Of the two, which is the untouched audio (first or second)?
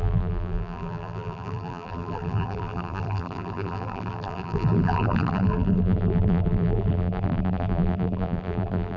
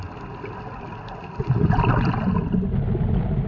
second